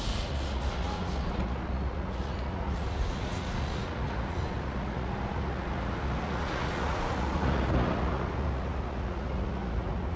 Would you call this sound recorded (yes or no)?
no